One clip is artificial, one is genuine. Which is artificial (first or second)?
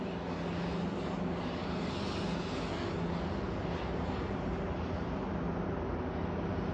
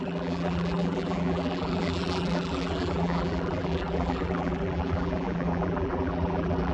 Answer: second